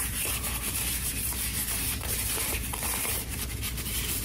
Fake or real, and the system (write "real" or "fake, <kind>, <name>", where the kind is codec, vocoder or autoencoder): fake, vocoder, BigVGAN v2